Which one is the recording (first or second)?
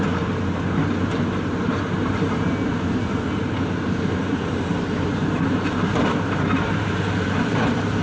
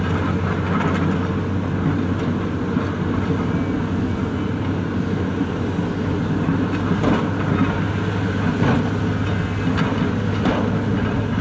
second